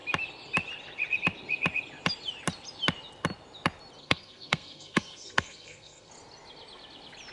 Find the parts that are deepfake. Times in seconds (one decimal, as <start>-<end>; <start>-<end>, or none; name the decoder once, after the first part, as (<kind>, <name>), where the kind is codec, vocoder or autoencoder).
4.0-6.1 (codec, SNAC)